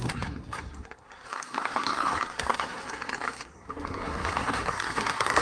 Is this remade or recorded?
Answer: remade